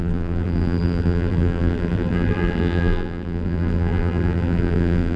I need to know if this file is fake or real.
fake